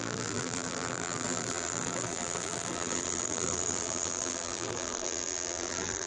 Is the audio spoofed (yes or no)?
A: yes